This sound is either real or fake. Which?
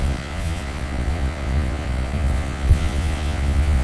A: fake